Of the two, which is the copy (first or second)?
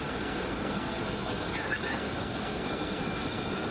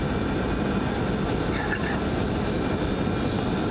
first